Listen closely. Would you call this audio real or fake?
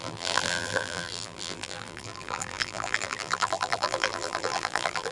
fake